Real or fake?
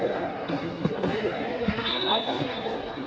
fake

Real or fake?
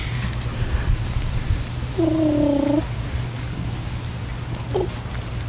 real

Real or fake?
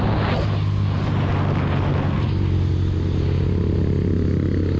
real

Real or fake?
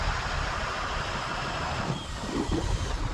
real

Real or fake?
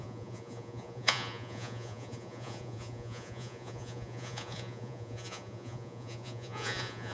fake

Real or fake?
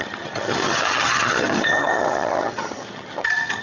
fake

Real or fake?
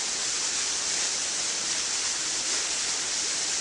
real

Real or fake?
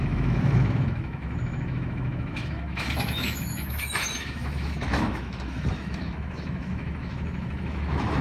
fake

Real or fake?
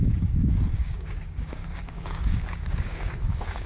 fake